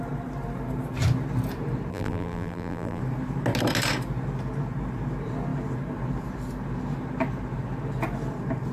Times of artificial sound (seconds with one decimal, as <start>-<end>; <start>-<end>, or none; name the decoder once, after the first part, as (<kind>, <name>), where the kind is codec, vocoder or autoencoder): 1.9-3.0 (vocoder, BigVGAN v2)